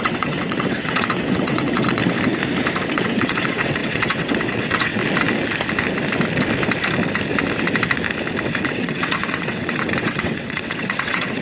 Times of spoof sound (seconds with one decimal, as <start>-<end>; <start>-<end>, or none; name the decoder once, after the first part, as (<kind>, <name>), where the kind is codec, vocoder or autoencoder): 0.0-2.0 (vocoder, WaveNeXt); 2.9-5.0; 8.4-11.4